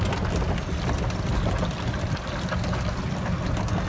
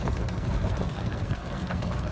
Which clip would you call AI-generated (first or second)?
second